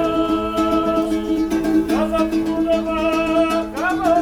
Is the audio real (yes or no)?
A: yes